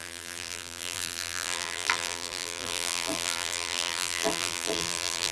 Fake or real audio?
fake